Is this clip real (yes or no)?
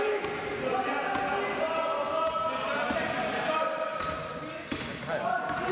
yes